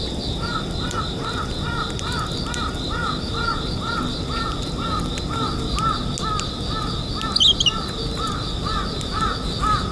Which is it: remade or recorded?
recorded